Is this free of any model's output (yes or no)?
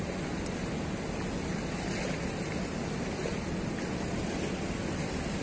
yes